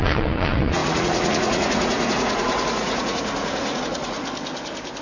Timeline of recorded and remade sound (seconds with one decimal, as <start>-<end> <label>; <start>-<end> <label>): 0.0-4.2 remade; 4.2-5.0 recorded